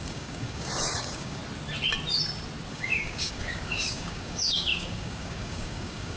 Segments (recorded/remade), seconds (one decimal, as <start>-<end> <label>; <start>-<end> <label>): 0.0-1.4 remade; 1.4-2.7 recorded; 2.7-6.2 remade